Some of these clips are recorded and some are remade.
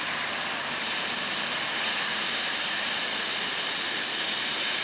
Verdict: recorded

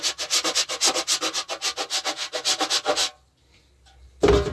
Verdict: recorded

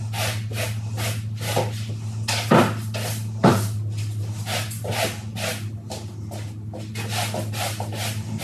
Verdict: recorded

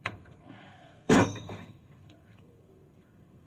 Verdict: remade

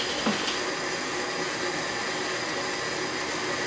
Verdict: recorded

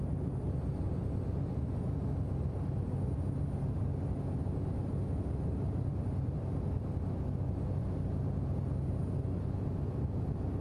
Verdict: recorded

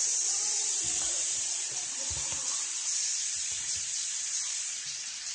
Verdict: remade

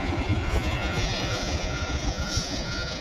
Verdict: remade